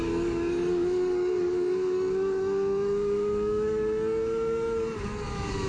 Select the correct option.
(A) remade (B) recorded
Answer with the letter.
A